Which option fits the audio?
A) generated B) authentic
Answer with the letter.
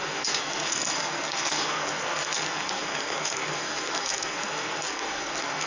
A